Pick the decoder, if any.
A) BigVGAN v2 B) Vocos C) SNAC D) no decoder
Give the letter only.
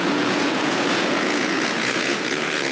B